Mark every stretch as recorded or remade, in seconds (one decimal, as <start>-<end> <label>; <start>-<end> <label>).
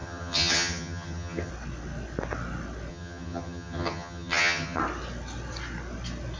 0.0-1.5 remade; 1.5-2.9 recorded; 2.9-4.8 remade; 4.8-6.4 recorded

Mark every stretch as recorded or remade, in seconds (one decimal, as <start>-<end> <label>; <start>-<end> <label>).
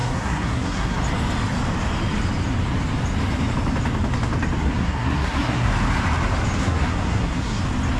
0.0-1.0 remade; 1.0-4.6 recorded; 4.6-5.7 remade; 5.7-6.6 recorded; 6.6-7.6 remade; 7.6-8.0 recorded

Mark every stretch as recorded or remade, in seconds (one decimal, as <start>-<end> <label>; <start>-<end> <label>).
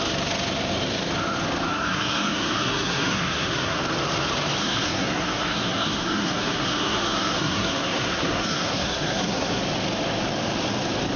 0.0-1.7 recorded; 1.7-3.8 remade; 3.8-4.6 recorded; 4.6-9.6 remade; 9.6-11.2 recorded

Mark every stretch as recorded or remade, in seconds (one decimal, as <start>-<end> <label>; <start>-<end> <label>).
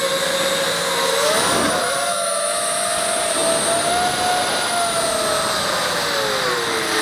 0.0-2.1 recorded; 2.1-2.9 remade; 2.9-7.0 recorded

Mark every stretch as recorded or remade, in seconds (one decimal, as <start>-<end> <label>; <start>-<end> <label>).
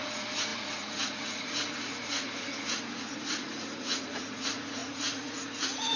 0.0-6.0 remade